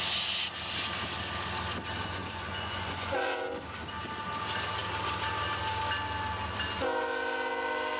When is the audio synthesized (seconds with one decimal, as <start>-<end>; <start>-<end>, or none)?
2.0-3.5